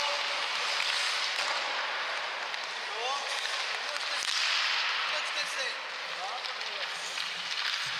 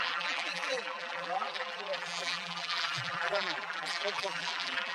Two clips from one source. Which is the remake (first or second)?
second